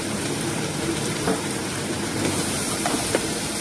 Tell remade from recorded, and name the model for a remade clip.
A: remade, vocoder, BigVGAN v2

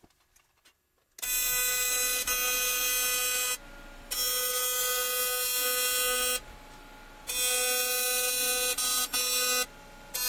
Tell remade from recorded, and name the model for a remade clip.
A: recorded